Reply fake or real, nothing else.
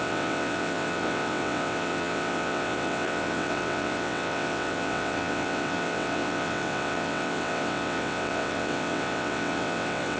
fake